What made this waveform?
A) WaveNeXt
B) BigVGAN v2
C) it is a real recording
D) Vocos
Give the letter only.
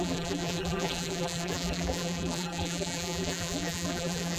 B